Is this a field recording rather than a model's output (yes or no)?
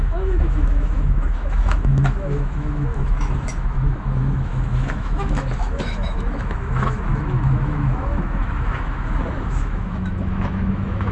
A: no